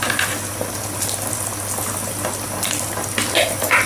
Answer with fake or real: real